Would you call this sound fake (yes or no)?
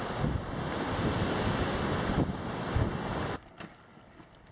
no